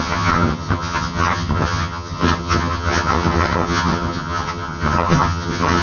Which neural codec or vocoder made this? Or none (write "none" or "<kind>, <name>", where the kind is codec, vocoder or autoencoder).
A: vocoder, HiFi-GAN